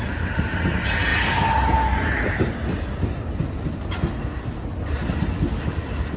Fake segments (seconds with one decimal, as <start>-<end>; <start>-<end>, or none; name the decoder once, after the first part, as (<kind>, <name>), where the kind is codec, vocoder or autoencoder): none